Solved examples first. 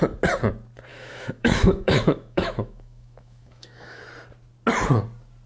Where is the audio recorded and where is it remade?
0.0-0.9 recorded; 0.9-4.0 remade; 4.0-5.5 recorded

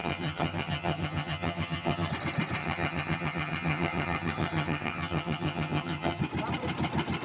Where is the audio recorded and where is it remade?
0.0-2.1 remade; 2.1-2.6 recorded; 2.6-6.2 remade; 6.2-7.2 recorded

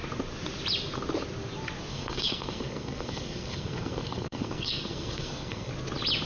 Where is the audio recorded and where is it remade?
0.0-1.9 recorded; 1.9-5.7 remade; 5.7-6.3 recorded

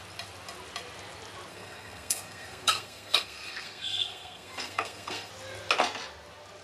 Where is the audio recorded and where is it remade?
0.0-1.5 recorded; 1.5-5.3 remade; 5.3-6.6 recorded